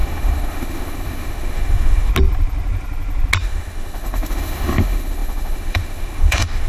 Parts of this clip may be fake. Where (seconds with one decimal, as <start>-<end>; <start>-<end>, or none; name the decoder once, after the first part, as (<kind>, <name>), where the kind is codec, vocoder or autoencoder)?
0.0-2.1 (autoencoder, DAC-VAE); 3.4-6.7